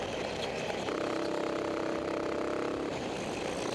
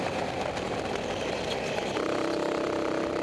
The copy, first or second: second